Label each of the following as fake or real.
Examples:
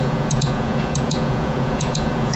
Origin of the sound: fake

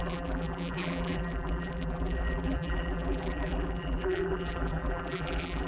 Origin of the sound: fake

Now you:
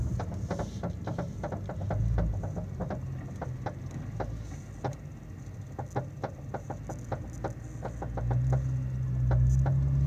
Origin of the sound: real